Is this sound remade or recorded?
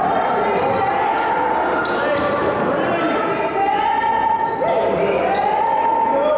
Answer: recorded